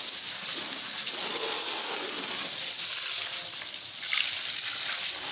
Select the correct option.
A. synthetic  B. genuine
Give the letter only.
B